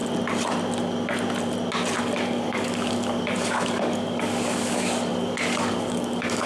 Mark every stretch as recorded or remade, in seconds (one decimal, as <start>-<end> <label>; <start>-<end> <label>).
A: 0.0-2.0 recorded; 2.0-6.5 remade